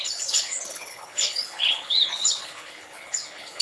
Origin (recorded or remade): remade